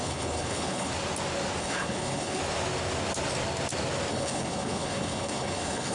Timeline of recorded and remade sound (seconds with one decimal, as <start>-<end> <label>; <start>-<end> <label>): 0.0-0.9 remade; 0.9-1.6 recorded; 1.6-2.4 remade; 2.4-4.1 recorded; 4.1-5.9 remade

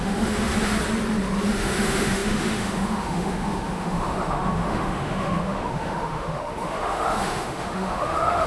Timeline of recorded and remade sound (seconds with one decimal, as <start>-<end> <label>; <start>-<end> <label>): 0.0-0.5 remade; 0.5-1.5 recorded; 1.5-8.5 remade

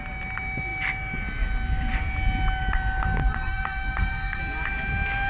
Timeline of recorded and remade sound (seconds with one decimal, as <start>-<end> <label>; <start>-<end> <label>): 0.0-3.2 recorded; 3.2-4.4 remade; 4.4-5.3 recorded

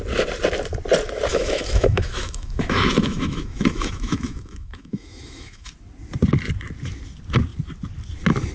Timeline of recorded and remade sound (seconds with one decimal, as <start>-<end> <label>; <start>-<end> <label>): 0.0-1.3 recorded; 1.3-5.7 remade; 5.7-8.5 recorded

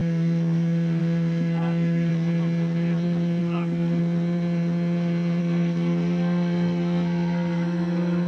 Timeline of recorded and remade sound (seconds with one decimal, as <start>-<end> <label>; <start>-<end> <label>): 0.0-2.1 remade; 2.1-3.4 recorded; 3.4-4.0 remade; 4.0-5.4 recorded; 5.4-8.3 remade